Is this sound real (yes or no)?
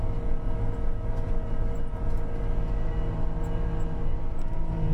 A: yes